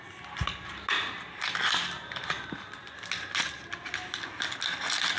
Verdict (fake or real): real